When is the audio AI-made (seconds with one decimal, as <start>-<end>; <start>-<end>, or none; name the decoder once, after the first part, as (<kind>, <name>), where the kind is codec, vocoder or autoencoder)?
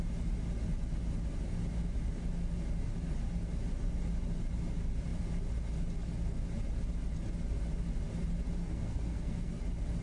8.6-9.6 (codec, SNAC)